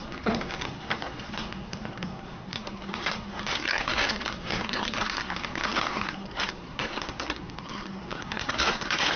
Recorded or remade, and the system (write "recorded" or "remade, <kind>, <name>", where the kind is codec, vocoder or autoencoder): remade, codec, SNAC